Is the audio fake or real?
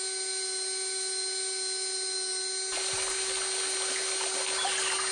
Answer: real